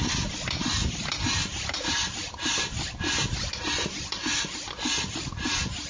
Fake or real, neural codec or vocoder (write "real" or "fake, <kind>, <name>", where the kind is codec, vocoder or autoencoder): real